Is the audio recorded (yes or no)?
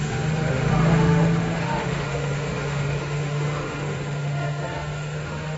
no